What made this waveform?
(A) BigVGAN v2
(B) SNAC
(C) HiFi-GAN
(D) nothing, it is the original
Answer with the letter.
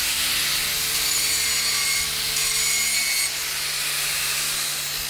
D